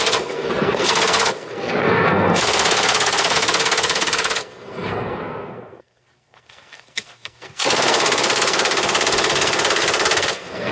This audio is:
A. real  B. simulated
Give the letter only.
B